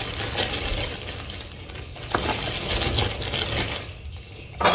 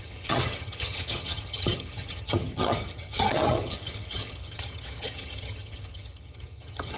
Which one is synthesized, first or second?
second